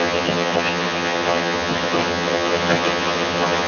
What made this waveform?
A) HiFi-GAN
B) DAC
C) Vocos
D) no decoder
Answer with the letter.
A